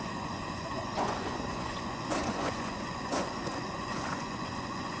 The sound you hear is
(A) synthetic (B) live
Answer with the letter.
A